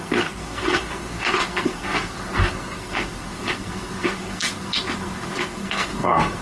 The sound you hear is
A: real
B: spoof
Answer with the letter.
B